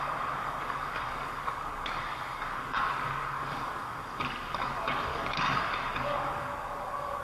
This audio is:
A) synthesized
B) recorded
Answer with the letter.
A